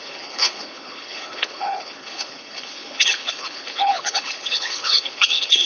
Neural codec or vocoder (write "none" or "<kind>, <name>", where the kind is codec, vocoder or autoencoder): codec, HILCodec